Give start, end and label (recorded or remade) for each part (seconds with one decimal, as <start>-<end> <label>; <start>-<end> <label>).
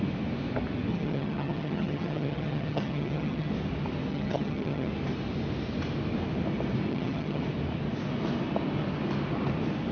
0.0-0.9 recorded; 0.9-3.5 remade; 3.5-4.1 recorded; 4.1-4.9 remade; 4.9-6.9 recorded; 6.9-7.4 remade; 7.4-9.9 recorded